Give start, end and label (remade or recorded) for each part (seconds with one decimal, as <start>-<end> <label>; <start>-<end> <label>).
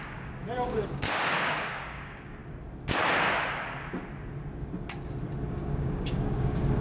0.0-2.4 remade; 2.4-5.5 recorded; 5.5-6.8 remade